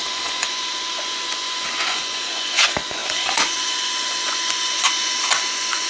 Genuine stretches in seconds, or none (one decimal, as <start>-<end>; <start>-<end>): none